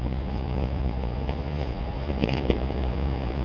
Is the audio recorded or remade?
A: remade